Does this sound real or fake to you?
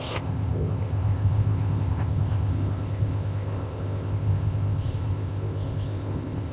fake